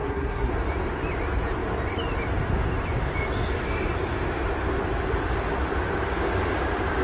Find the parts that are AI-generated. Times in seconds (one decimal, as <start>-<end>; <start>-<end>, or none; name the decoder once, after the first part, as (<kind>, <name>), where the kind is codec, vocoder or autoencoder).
0.0-0.5 (codec, SNAC)